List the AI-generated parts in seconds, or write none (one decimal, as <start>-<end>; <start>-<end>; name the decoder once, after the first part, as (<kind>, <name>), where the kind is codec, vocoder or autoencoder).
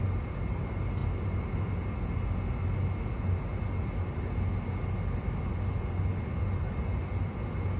none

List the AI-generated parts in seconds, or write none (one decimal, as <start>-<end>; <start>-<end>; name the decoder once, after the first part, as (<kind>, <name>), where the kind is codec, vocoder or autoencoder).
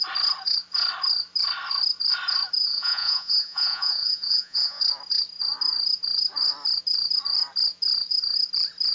2.6-4.8 (vocoder, Vocos)